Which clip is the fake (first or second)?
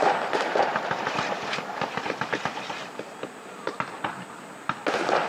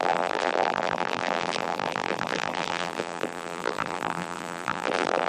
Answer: second